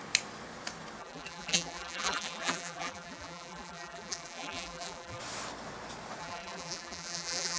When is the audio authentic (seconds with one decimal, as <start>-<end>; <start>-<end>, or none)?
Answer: 0.0-1.0; 5.2-6.2